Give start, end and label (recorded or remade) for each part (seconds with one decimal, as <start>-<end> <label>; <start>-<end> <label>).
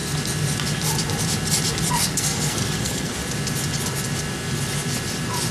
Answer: 0.0-1.9 recorded; 1.9-3.2 remade; 3.2-5.5 recorded